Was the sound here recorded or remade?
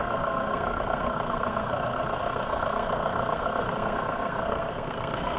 remade